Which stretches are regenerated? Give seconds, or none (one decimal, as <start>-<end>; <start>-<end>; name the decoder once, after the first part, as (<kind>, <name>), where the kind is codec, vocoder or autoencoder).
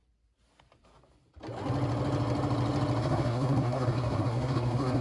3.0-5.0 (codec, SNAC)